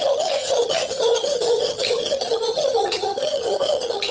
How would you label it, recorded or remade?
remade